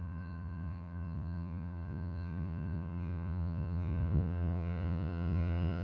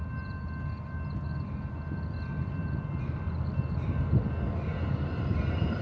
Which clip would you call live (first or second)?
second